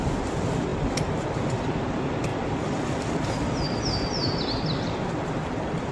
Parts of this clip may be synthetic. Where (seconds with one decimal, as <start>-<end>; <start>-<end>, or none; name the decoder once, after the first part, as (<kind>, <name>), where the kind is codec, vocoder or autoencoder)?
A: none